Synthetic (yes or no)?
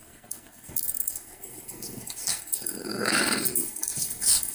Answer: yes